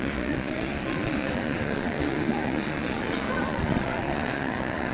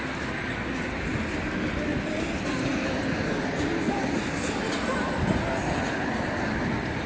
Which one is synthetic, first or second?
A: first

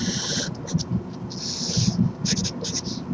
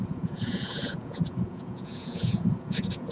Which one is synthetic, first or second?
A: second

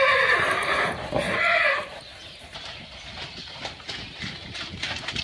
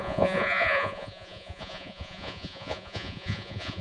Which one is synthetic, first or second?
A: second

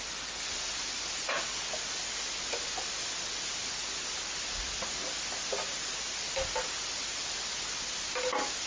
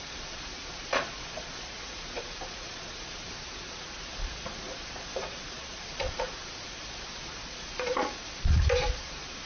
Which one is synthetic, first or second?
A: second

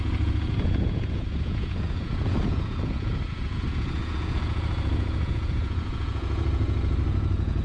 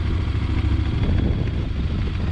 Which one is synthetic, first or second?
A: first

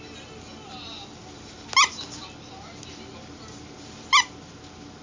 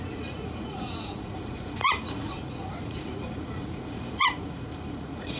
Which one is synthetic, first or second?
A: second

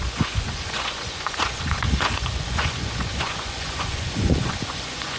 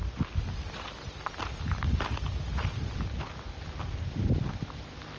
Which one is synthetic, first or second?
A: first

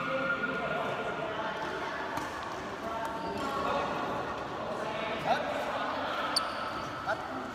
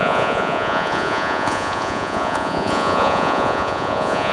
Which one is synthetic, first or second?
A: second